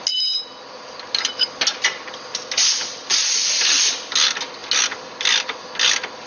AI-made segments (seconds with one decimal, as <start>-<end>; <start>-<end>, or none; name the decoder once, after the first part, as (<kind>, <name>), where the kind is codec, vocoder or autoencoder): none